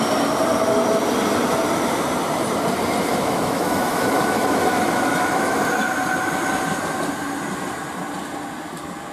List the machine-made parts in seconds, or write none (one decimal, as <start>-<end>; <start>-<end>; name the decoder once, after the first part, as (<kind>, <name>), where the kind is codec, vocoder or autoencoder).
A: 3.1-5.6 (autoencoder, DAC-VAE)